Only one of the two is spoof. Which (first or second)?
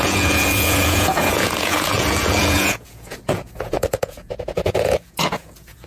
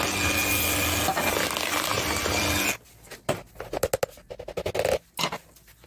first